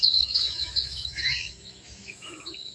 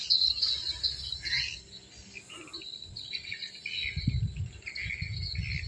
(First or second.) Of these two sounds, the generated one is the first